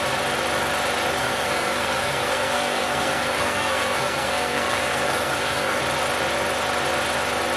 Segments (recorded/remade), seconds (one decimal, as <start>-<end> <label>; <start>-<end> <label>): 0.0-1.2 recorded; 1.2-5.8 remade; 5.8-7.6 recorded